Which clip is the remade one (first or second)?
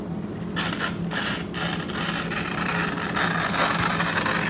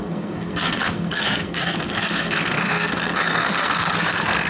second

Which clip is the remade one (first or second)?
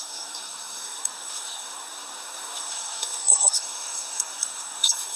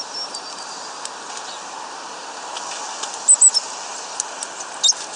first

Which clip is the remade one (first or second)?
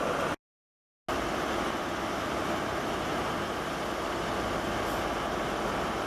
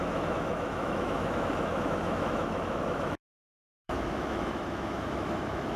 second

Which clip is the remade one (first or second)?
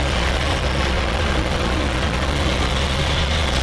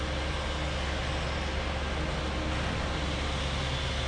first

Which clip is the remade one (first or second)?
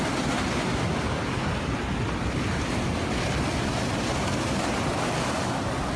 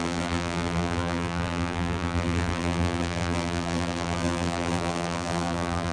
second